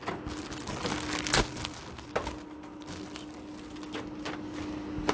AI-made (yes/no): no